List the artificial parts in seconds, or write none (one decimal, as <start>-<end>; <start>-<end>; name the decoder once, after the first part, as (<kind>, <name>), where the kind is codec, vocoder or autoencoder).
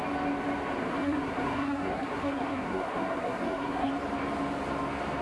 0.8-3.9 (codec, SNAC)